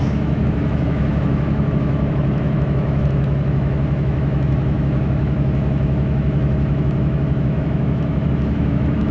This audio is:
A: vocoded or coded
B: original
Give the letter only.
A